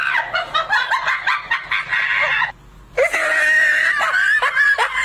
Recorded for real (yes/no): yes